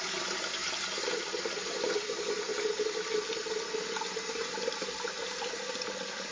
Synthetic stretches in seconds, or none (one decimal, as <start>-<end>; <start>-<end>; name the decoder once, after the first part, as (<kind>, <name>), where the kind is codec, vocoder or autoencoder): none